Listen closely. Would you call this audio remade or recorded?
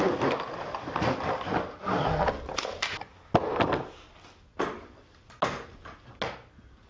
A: recorded